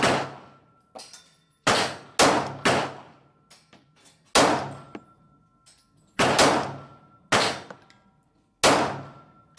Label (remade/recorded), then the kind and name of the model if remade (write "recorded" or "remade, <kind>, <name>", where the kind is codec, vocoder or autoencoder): recorded